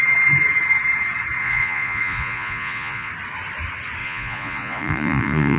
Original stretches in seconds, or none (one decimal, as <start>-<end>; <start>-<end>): 0.0-1.4; 3.1-4.0